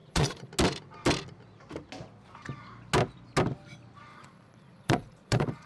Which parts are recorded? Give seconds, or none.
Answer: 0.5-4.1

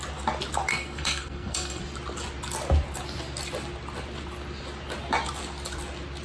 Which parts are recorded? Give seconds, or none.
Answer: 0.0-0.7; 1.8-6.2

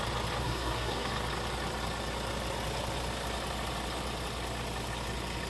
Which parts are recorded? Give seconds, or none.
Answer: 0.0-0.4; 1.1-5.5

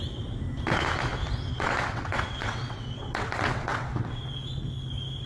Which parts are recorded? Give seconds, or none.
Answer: 0.0-1.5; 4.2-5.3